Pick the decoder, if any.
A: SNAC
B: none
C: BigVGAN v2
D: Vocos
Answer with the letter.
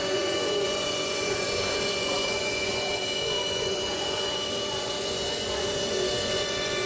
D